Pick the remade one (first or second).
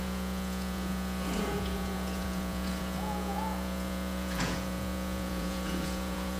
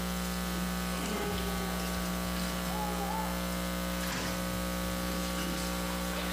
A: first